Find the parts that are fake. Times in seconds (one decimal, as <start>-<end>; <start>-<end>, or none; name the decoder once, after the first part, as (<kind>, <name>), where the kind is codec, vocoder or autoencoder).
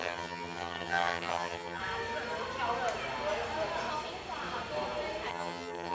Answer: 0.0-1.8 (vocoder, HiFi-GAN); 5.3-5.9